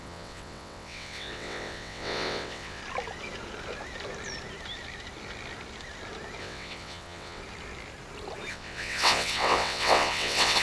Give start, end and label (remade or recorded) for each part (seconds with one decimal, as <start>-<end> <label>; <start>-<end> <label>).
0.0-2.8 remade; 2.8-6.4 recorded; 6.4-7.4 remade; 7.4-8.5 recorded; 8.5-10.6 remade